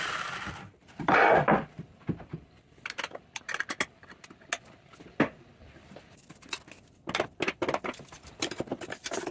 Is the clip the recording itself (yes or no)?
yes